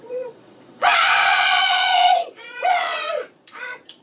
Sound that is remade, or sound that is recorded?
remade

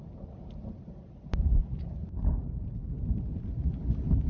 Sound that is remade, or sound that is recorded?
recorded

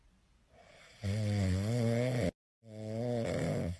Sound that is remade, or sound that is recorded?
recorded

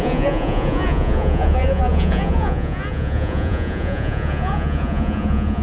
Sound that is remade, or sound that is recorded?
remade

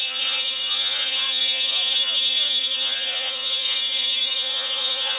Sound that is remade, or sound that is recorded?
remade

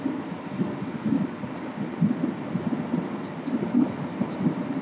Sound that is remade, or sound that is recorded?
recorded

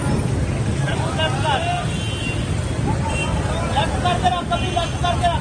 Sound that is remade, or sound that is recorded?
recorded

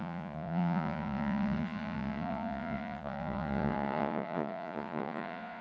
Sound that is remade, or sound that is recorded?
remade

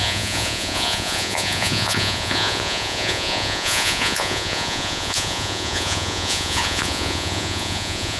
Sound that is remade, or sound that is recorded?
remade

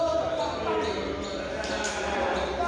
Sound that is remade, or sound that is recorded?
recorded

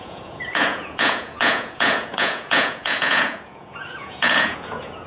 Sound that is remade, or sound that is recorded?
remade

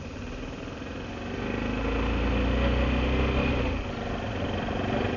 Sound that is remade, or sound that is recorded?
recorded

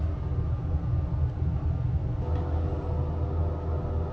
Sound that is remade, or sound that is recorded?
recorded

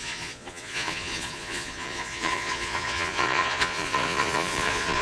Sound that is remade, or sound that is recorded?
remade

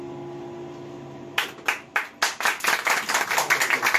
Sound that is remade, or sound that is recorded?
recorded